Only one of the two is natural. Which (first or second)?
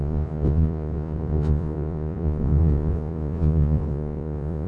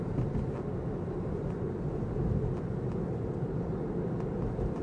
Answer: second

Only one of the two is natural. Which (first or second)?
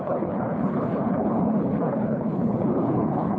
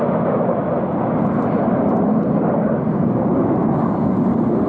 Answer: second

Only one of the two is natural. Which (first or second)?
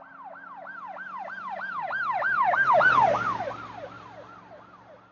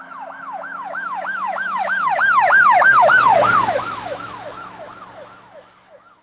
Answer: first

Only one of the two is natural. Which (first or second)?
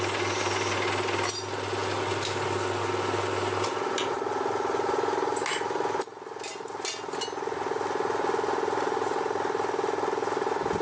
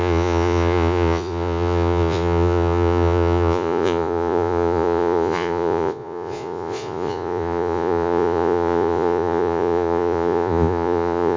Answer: first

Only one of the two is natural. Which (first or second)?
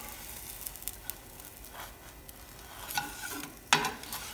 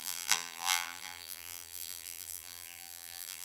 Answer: first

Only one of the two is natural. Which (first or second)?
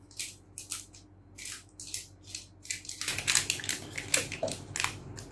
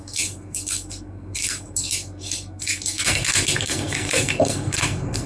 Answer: first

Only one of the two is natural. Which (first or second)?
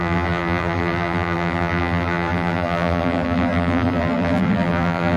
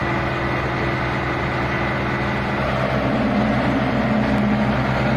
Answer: second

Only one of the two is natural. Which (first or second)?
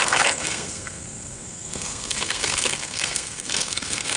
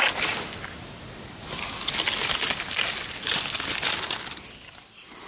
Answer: second